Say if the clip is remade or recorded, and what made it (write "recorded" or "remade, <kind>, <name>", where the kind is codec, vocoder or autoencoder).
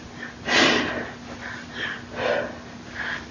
recorded